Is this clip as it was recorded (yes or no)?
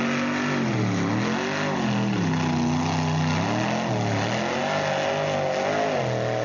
yes